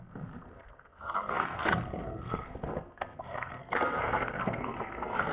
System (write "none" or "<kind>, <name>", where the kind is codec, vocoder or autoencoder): codec, SNAC